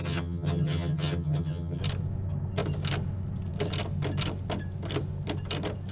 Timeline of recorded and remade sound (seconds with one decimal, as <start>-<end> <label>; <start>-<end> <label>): 0.0-1.8 remade; 1.8-5.9 recorded